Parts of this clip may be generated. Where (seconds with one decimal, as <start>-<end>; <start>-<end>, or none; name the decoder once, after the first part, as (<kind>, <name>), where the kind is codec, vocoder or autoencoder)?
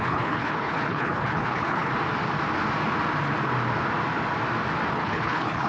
0.0-1.9 (codec, HILCodec); 4.9-5.7